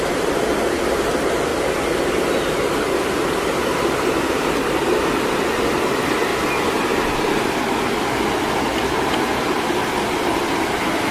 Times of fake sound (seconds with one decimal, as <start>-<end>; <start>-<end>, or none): none